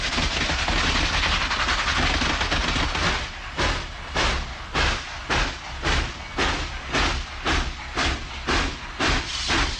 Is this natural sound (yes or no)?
yes